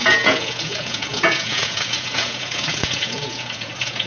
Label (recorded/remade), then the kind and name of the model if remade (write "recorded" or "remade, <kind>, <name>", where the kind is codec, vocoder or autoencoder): remade, vocoder, Vocos